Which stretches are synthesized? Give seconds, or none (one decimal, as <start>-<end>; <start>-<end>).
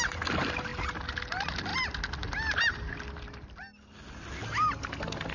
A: none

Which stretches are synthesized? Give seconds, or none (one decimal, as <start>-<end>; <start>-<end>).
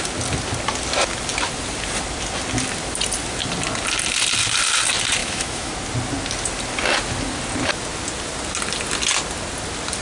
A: 5.2-5.7